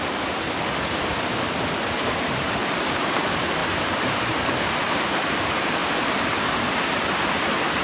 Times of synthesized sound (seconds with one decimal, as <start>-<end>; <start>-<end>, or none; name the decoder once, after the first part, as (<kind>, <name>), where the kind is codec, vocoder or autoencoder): 2.6-3.2 (vocoder, BigVGAN v2); 3.6-4.8